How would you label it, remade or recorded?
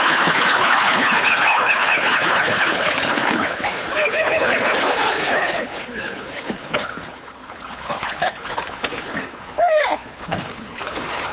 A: remade